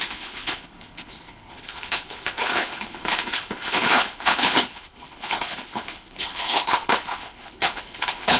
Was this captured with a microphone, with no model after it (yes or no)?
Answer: no